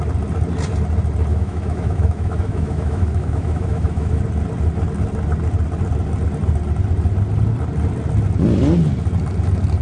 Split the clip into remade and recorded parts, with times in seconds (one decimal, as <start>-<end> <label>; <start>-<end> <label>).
0.0-1.3 recorded; 1.3-4.2 remade; 4.2-9.8 recorded